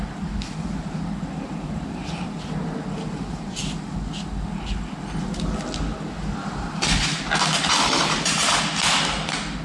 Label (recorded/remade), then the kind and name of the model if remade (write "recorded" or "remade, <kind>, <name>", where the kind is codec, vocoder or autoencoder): recorded